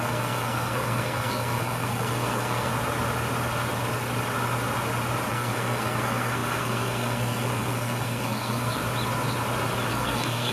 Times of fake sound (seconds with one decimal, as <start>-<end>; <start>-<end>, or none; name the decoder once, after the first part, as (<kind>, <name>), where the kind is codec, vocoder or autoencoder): 0.0-2.7 (codec, SNAC); 5.3-8.8; 9.9-10.5